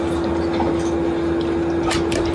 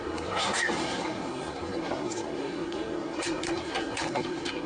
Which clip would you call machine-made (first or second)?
second